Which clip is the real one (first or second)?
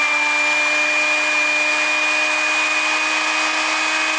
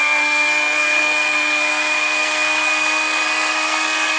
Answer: first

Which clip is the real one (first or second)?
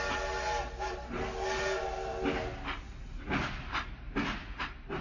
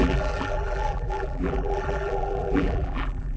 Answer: first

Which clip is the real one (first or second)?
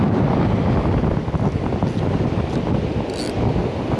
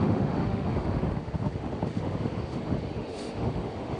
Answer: first